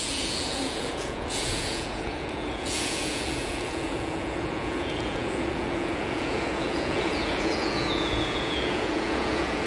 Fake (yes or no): yes